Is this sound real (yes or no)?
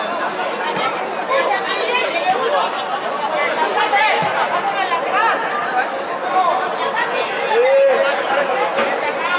yes